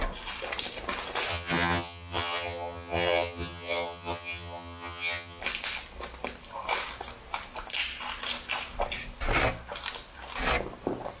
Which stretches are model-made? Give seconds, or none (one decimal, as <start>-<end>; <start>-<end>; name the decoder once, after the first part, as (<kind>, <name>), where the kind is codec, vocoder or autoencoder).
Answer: 1.3-5.4 (vocoder, HiFi-GAN)